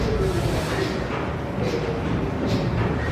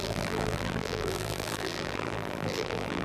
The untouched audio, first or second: first